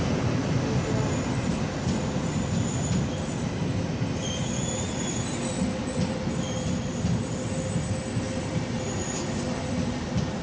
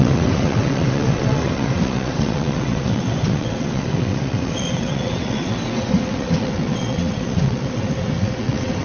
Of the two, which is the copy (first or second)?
second